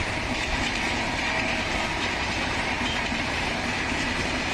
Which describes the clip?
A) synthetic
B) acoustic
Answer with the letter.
A